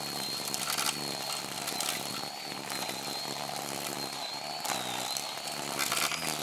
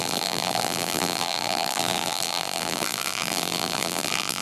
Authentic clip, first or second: first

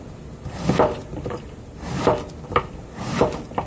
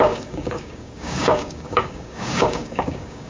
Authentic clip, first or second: first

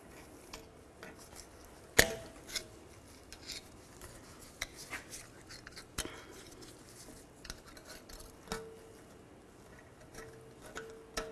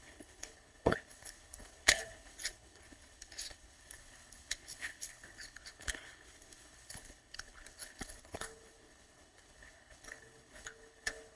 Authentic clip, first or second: first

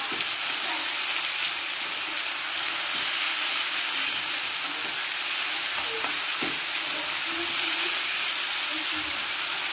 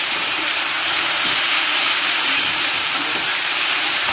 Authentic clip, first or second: first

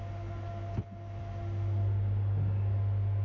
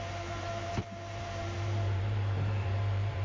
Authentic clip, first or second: first